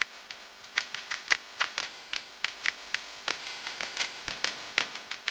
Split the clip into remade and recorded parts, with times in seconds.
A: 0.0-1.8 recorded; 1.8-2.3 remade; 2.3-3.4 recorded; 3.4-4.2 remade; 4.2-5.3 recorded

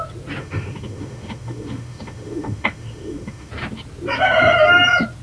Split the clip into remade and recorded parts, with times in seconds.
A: 0.0-0.4 recorded; 0.4-3.5 remade; 3.5-5.2 recorded

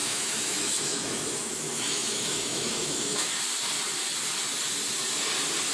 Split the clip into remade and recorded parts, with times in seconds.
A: 0.0-3.4 remade; 3.4-5.7 recorded

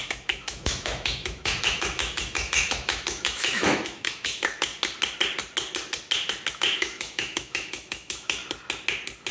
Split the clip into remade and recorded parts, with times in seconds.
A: 0.0-4.7 remade; 4.7-6.5 recorded; 6.5-8.4 remade; 8.4-9.3 recorded

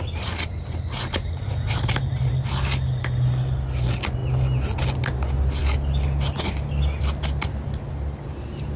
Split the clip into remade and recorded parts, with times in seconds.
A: 0.0-8.8 recorded

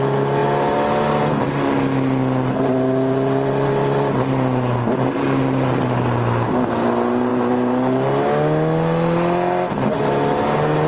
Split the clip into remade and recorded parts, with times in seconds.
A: 0.0-10.9 recorded

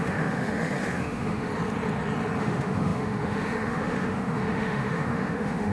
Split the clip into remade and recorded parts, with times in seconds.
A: 0.0-1.5 remade; 1.5-2.4 recorded; 2.4-5.7 remade